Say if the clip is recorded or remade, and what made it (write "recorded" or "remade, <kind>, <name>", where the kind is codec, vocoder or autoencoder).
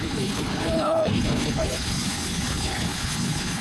remade, codec, HILCodec